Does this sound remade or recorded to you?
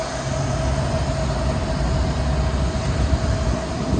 recorded